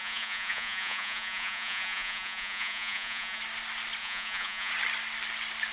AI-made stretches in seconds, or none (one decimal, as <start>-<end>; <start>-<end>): 0.0-3.4; 4.0-4.7